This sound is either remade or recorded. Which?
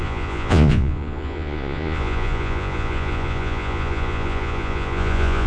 remade